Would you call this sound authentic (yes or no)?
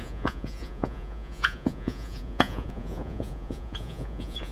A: no